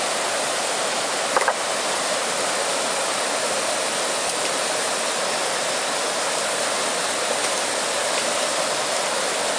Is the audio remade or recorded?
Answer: recorded